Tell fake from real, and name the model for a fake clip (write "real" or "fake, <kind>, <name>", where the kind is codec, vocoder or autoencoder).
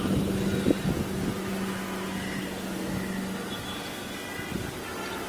real